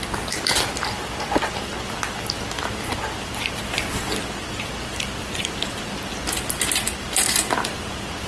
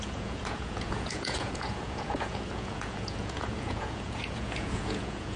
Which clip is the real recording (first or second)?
first